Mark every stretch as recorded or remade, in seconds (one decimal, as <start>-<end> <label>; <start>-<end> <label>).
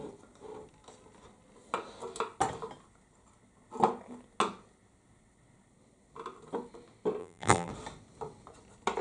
0.0-7.2 recorded; 7.2-7.7 remade; 7.7-9.0 recorded